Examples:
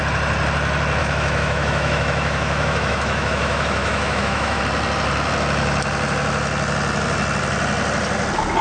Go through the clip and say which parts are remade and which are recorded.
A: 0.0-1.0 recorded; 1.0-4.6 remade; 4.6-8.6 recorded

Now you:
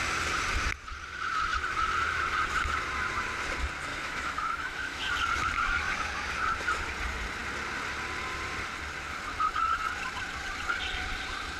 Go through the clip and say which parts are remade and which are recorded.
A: 0.0-3.9 recorded; 3.9-5.1 remade; 5.1-11.6 recorded

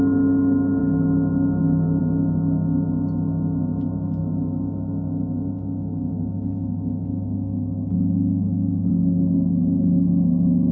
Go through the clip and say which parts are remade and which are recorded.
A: 0.0-0.8 recorded; 0.8-2.0 remade; 2.0-4.2 recorded; 4.2-8.9 remade; 8.9-10.7 recorded

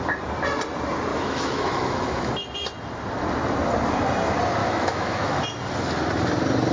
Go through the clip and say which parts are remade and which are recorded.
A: 0.0-1.1 recorded; 1.1-2.3 remade; 2.3-4.6 recorded; 4.6-5.4 remade; 5.4-6.7 recorded

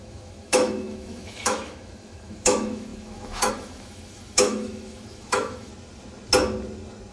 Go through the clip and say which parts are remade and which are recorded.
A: 0.0-5.7 remade; 5.7-7.1 recorded

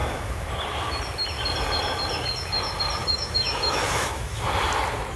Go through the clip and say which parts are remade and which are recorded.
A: 0.0-0.5 remade; 0.5-3.0 recorded; 3.0-4.4 remade; 4.4-5.2 recorded